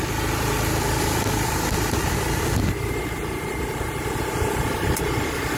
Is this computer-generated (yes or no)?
yes